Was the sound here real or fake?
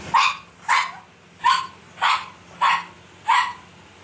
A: real